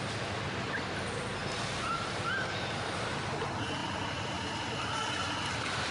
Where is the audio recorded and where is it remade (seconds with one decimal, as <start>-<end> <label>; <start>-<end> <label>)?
0.0-1.4 recorded; 1.4-3.4 remade; 3.4-3.8 recorded; 3.8-4.8 remade; 4.8-5.9 recorded